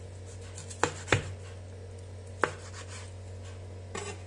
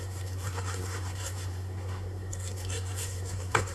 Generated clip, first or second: second